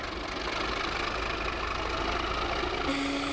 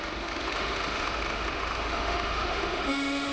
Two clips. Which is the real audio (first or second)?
first